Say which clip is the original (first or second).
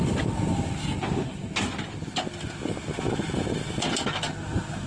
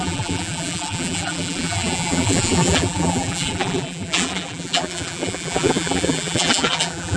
first